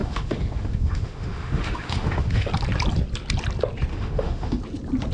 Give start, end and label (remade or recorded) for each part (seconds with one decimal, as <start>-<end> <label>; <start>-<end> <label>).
0.0-2.5 remade; 2.5-3.9 recorded; 3.9-4.6 remade; 4.6-5.1 recorded